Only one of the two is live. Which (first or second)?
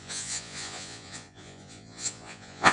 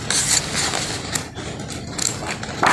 second